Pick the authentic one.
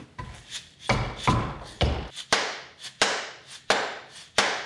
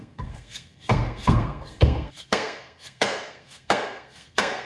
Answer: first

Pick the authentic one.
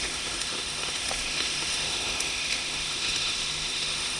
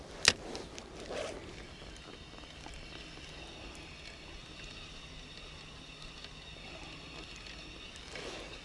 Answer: second